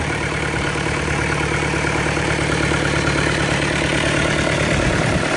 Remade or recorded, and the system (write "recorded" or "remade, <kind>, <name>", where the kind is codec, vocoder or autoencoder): remade, vocoder, BigVGAN v2